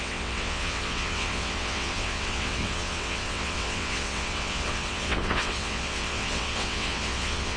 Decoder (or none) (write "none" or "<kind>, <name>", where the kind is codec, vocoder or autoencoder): vocoder, WaveNeXt